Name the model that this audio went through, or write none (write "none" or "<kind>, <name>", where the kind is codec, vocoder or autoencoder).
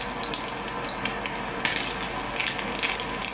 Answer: none